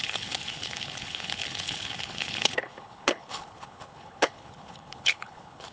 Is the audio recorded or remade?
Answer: remade